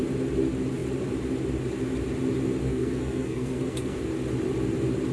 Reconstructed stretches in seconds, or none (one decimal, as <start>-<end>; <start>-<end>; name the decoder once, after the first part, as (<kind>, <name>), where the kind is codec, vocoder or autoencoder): 2.6-4.0 (codec, SNAC)